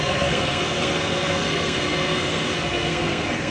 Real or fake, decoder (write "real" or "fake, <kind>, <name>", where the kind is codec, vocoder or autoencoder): fake, codec, SNAC